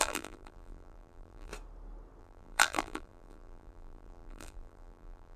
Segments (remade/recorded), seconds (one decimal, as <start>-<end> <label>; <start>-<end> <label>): 0.0-1.5 remade; 1.5-2.2 recorded; 2.2-5.4 remade